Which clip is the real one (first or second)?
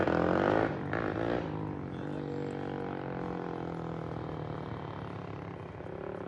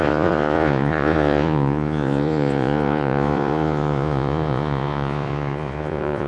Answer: first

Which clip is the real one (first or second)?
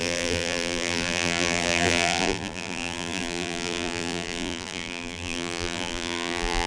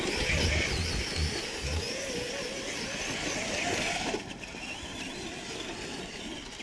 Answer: second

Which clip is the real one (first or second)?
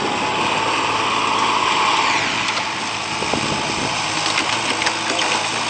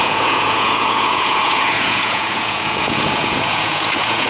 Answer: first